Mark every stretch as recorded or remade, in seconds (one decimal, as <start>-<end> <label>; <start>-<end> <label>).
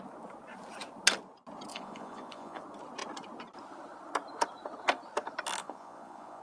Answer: 0.0-1.7 recorded; 1.7-2.6 remade; 2.6-5.6 recorded; 5.6-6.4 remade